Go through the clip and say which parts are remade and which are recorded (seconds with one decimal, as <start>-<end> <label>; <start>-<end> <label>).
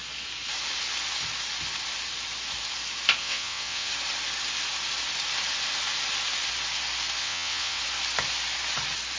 0.0-3.2 recorded; 3.2-3.9 remade; 3.9-7.2 recorded; 7.2-7.8 remade; 7.8-9.2 recorded